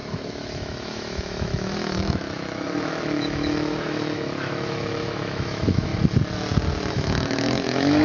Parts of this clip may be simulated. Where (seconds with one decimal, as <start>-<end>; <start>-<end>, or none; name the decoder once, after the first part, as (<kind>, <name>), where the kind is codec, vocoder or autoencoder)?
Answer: 0.0-5.9 (autoencoder, DAC-VAE); 6.9-8.0